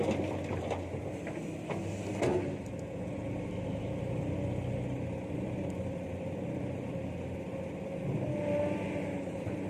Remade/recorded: recorded